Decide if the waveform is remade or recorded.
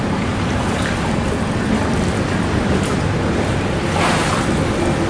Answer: recorded